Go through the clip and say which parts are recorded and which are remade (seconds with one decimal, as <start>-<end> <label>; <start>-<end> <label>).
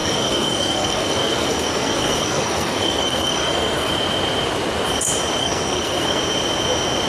0.0-3.9 remade; 3.9-5.4 recorded; 5.4-6.2 remade; 6.2-7.1 recorded